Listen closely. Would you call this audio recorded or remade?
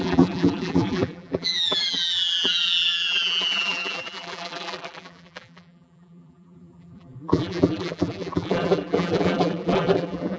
remade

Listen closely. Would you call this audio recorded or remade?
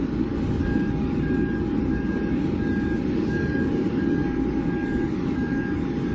remade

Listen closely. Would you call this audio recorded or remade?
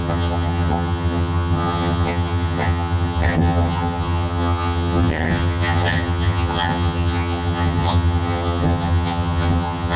remade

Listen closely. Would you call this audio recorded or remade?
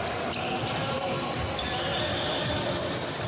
recorded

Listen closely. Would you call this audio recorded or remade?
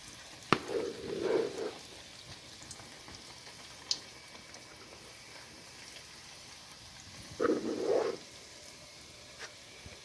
recorded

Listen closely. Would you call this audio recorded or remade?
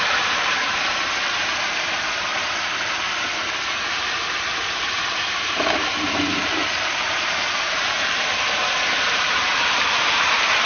remade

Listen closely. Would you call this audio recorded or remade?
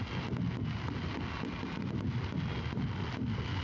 recorded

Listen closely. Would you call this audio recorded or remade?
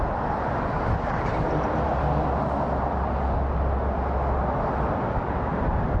recorded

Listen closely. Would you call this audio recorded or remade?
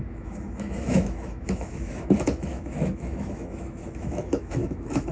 remade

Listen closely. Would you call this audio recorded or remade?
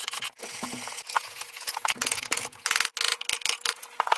remade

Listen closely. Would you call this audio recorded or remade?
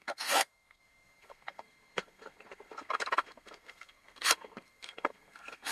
remade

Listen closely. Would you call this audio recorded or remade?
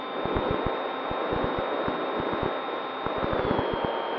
recorded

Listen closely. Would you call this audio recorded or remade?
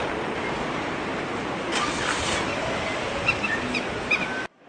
recorded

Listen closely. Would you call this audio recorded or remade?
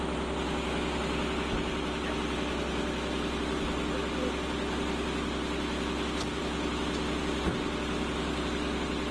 recorded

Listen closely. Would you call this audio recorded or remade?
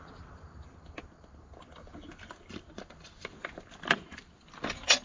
recorded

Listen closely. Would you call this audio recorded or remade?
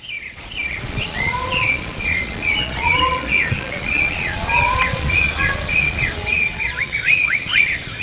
remade